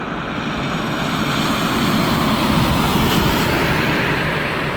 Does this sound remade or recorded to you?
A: recorded